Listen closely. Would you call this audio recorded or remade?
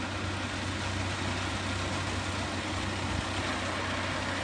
recorded